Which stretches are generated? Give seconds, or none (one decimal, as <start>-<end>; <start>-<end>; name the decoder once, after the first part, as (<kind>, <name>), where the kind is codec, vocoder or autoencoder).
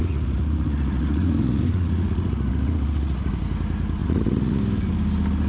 0.0-3.3 (vocoder, Vocos); 4.0-4.6